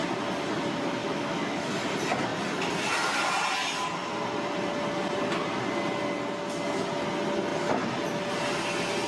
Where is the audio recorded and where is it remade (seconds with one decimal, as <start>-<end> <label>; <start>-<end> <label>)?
0.0-1.0 recorded; 1.0-1.7 remade; 1.7-9.1 recorded